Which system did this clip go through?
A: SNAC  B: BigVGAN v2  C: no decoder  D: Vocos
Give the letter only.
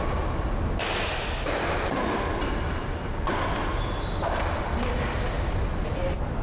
C